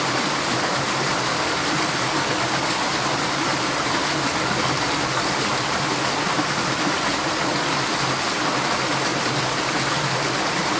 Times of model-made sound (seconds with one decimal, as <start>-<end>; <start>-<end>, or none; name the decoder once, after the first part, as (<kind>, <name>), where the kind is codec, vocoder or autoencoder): none